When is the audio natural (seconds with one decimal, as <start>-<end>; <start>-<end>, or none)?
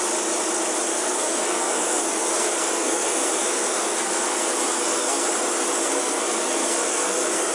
0.0-0.9; 5.3-5.8